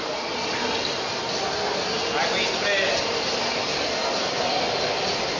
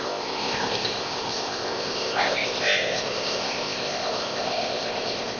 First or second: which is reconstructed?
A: second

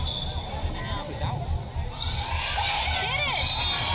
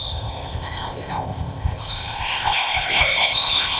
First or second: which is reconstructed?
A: second